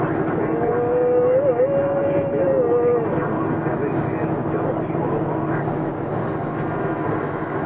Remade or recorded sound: recorded